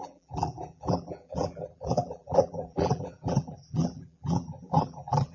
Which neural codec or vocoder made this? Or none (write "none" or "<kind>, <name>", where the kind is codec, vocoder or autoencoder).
vocoder, BigVGAN v2